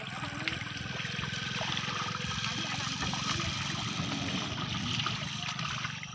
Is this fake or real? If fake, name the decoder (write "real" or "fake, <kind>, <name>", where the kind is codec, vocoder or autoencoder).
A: real